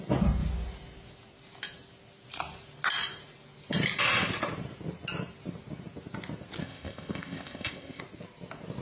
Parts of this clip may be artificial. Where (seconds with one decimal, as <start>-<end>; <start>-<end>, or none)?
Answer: 6.6-8.0